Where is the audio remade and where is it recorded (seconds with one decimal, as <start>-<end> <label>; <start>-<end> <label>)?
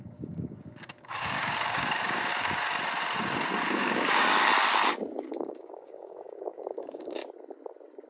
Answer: 0.0-2.3 remade; 2.3-3.6 recorded; 3.6-4.5 remade; 4.5-5.2 recorded; 5.2-7.2 remade; 7.2-8.1 recorded